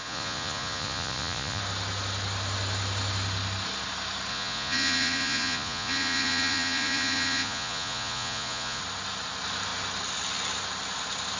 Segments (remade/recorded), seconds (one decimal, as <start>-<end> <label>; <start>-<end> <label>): 0.0-1.6 remade; 1.6-4.3 recorded; 4.3-8.8 remade; 8.8-11.4 recorded